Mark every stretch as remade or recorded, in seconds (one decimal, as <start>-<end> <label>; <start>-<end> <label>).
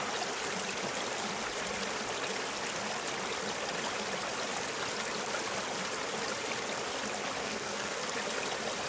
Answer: 0.0-7.4 recorded; 7.4-8.0 remade; 8.0-8.9 recorded